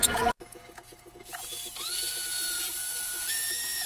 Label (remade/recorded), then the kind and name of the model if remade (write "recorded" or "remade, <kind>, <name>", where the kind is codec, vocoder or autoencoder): remade, vocoder, Vocos